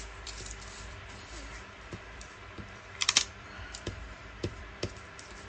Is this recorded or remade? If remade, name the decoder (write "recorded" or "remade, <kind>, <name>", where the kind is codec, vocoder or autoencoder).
remade, vocoder, BigVGAN v2